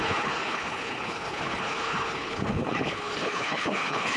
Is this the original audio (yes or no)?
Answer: no